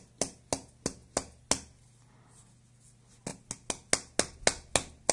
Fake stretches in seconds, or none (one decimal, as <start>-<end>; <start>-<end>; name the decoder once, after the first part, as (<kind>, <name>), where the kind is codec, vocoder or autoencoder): none